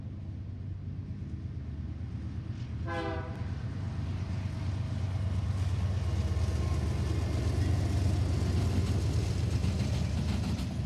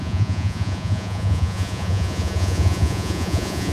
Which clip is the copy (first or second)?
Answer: second